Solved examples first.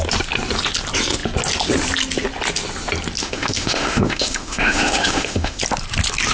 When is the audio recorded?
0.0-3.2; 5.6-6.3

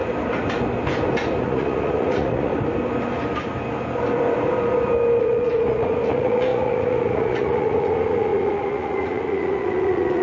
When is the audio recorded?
0.0-1.4; 2.5-5.2